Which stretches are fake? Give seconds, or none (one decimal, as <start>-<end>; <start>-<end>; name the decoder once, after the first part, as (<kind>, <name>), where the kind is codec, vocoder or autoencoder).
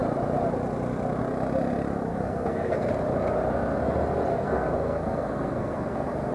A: 2.1-2.9 (codec, SNAC); 4.3-6.3